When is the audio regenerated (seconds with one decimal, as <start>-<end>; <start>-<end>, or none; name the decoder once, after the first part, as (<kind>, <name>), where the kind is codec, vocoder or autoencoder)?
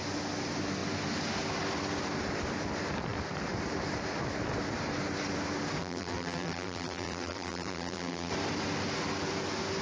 5.8-8.3 (vocoder, BigVGAN v2)